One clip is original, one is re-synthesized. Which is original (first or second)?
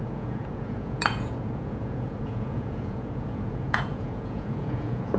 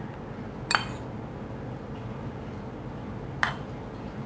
second